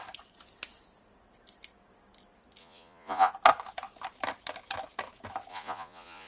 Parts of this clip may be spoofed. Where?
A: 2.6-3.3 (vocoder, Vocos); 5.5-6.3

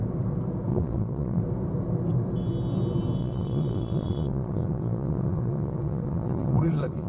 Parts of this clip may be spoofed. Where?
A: 0.7-1.4 (vocoder, Vocos); 3.2-7.1

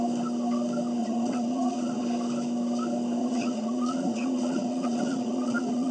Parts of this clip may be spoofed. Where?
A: 1.0-2.0 (vocoder, Vocos); 3.2-5.9

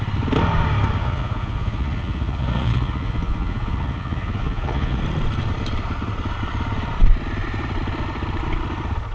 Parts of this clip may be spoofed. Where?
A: 1.0-5.0 (vocoder, Vocos)

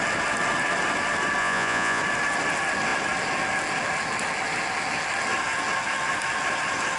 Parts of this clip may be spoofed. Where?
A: 1.4-2.0 (vocoder, Vocos)

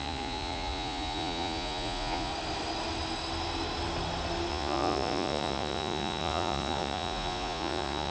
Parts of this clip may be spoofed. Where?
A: 0.0-2.3 (vocoder, Vocos); 4.5-8.1

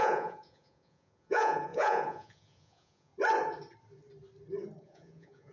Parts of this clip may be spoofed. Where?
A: 0.0-3.1 (vocoder, Vocos); 4.8-5.5